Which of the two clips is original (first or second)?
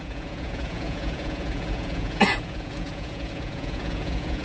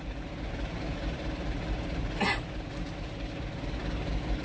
second